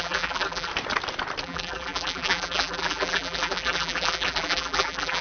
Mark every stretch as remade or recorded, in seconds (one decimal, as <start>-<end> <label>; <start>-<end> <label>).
0.0-0.7 remade; 0.7-1.4 recorded; 1.4-5.2 remade